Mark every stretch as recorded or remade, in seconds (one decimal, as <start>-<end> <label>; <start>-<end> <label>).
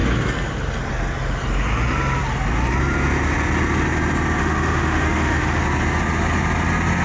0.0-4.4 recorded; 4.4-5.6 remade; 5.6-7.0 recorded